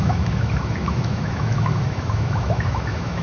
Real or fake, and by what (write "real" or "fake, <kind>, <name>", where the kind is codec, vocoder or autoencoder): fake, autoencoder, DAC-VAE